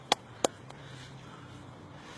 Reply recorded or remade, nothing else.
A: recorded